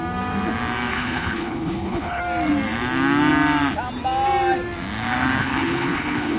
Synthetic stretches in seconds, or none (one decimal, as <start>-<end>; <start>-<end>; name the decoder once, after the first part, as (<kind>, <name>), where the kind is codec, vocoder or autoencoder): 0.9-2.2 (codec, HILCodec); 5.4-6.4